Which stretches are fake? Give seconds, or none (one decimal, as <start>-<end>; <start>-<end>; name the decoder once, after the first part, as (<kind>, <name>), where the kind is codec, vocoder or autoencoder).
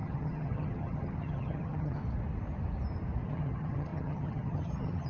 0.0-2.0 (vocoder, HiFi-GAN); 3.3-5.1